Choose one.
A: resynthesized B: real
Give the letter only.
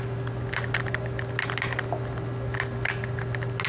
B